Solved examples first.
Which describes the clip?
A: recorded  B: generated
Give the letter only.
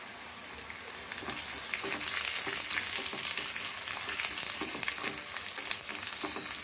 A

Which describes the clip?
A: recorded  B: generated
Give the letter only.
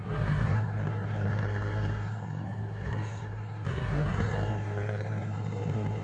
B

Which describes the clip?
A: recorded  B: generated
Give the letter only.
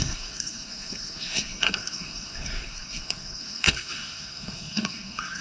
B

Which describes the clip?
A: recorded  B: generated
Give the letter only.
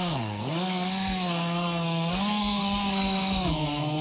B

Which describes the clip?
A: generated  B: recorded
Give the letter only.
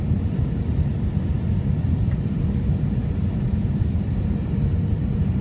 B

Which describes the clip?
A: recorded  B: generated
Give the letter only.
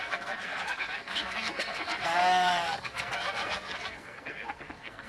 B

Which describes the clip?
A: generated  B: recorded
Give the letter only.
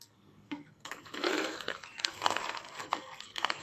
A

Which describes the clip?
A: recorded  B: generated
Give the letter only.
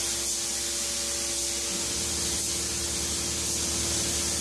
A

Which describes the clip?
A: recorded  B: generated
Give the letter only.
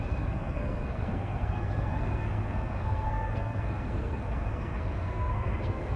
B